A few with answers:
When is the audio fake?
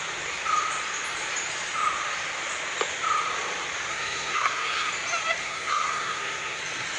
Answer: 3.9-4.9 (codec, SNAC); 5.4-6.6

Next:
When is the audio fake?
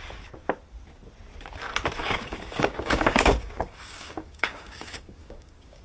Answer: 2.0-5.8 (codec, DAC)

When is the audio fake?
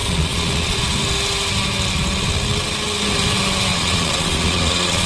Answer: 0.0-0.8 (vocoder, Vocos); 3.7-5.1